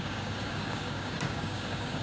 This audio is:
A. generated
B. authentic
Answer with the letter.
A